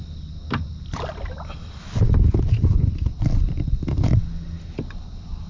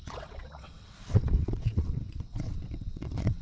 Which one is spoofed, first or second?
second